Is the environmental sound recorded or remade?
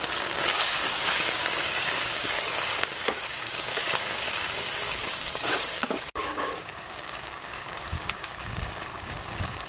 remade